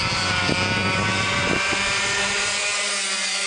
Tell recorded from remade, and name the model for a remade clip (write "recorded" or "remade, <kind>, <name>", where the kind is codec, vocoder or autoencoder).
recorded